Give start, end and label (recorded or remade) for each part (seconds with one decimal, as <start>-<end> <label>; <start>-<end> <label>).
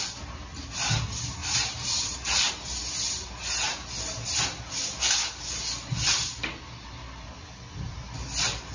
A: 0.0-1.4 recorded; 1.4-2.5 remade; 2.5-8.7 recorded